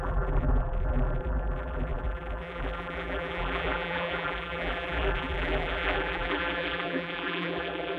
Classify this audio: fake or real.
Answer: fake